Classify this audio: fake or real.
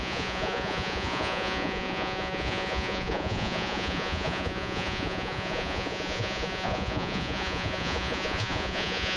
fake